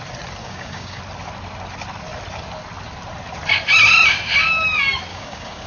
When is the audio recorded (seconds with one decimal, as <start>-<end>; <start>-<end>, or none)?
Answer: 0.0-0.4; 1.0-5.1